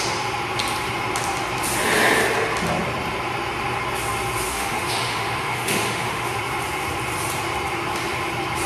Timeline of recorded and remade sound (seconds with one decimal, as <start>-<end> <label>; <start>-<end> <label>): 0.0-4.5 recorded; 4.5-6.3 remade; 6.3-8.7 recorded